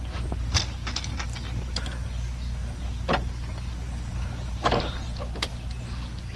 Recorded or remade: recorded